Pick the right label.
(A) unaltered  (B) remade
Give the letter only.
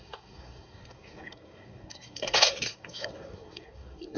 B